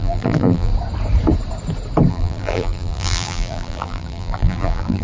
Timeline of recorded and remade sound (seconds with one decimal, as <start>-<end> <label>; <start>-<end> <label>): 0.0-0.7 remade; 0.7-2.1 recorded; 2.1-5.0 remade